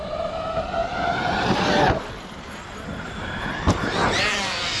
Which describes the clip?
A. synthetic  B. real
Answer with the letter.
B